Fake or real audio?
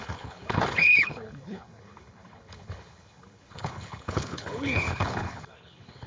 fake